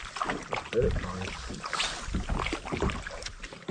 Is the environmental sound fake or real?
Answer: real